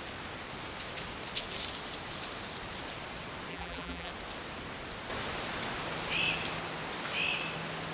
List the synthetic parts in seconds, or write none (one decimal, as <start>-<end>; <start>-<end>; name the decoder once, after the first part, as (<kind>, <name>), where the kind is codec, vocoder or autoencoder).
3.5-4.1 (vocoder, BigVGAN v2)